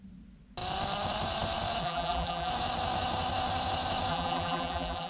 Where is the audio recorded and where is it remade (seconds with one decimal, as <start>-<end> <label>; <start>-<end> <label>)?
0.0-1.8 recorded; 1.8-2.5 remade; 2.5-4.1 recorded; 4.1-5.1 remade